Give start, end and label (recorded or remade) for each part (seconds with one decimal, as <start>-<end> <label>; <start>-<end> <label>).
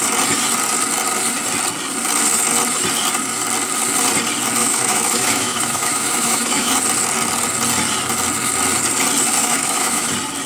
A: 0.0-4.6 recorded; 4.6-6.7 remade; 6.7-9.4 recorded; 9.4-10.1 remade; 10.1-10.5 recorded